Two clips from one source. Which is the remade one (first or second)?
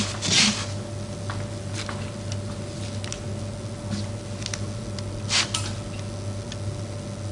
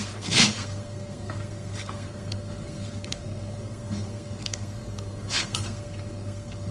second